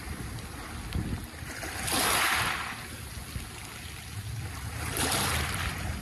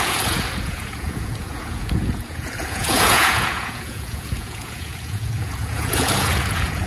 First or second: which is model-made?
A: second